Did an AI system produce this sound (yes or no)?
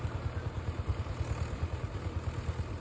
no